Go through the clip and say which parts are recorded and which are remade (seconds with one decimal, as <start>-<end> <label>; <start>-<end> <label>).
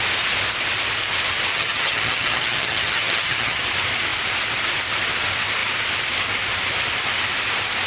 0.0-1.5 recorded; 1.5-3.6 remade; 3.6-7.9 recorded